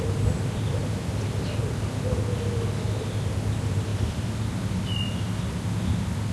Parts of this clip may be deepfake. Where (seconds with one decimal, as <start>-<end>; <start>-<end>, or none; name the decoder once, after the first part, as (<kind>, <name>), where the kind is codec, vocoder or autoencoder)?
none